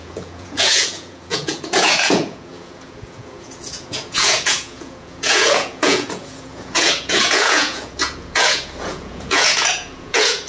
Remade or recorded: remade